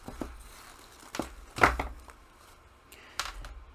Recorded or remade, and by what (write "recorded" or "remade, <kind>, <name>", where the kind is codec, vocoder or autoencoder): recorded